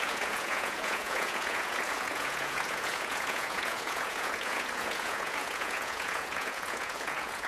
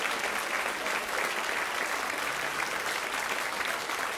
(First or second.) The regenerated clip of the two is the first